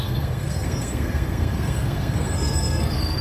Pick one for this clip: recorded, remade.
remade